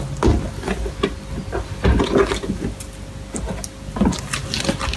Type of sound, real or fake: real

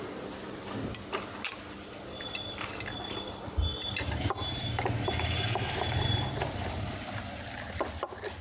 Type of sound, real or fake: real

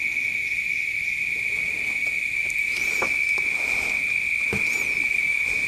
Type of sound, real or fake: real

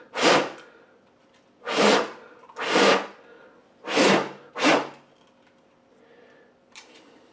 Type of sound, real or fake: real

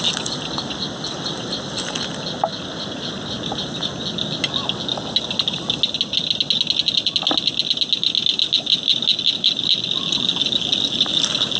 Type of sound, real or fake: real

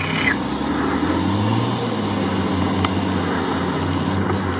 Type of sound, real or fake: real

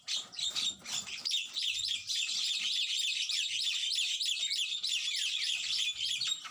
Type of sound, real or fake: fake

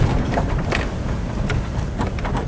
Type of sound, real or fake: fake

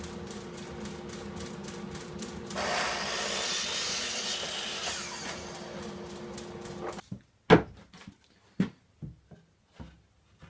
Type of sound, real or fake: real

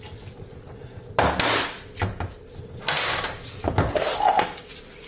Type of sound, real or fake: real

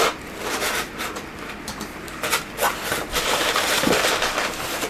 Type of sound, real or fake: fake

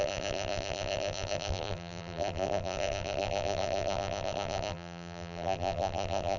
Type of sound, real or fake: fake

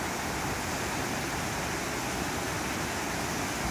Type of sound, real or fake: real